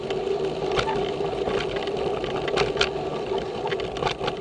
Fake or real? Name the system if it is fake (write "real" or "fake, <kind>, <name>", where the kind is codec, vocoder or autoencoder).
real